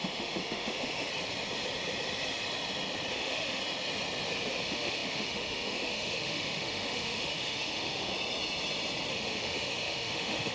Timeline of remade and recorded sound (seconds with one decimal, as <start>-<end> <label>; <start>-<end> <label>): 0.0-1.1 remade; 1.1-3.1 recorded; 3.1-3.6 remade; 3.6-4.6 recorded; 4.6-8.1 remade; 8.1-9.1 recorded; 9.1-10.5 remade